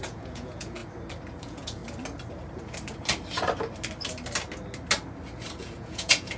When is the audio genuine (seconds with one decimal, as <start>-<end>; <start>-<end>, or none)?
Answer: 0.8-1.4; 1.8-5.6